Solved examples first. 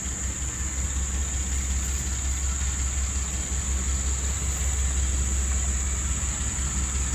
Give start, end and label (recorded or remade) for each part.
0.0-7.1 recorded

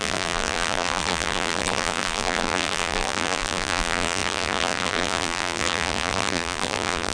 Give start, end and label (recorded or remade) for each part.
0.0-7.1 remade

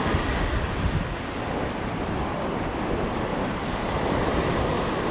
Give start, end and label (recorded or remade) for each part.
0.0-3.3 recorded; 3.3-4.0 remade; 4.0-5.1 recorded

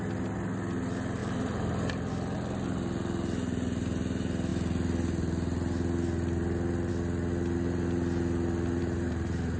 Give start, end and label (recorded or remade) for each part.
0.0-1.2 recorded; 1.2-2.1 remade; 2.1-8.8 recorded; 8.8-9.6 remade

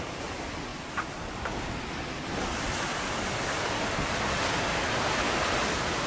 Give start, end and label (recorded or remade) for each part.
0.0-6.1 recorded

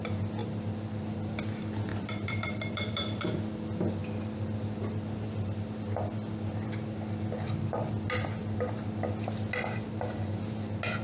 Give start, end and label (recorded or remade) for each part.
0.0-1.9 recorded; 1.9-3.3 remade; 3.3-11.0 recorded